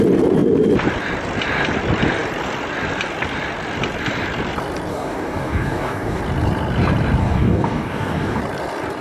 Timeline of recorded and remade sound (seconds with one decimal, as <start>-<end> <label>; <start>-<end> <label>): 0.0-4.9 recorded; 4.9-6.2 remade; 6.2-7.2 recorded; 7.2-8.4 remade; 8.4-9.0 recorded